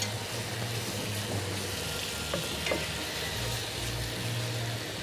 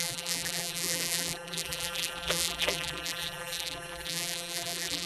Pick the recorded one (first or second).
first